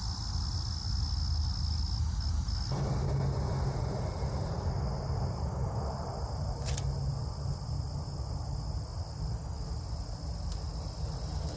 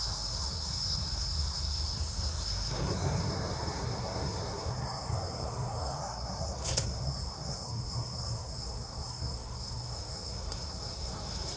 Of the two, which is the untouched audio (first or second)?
first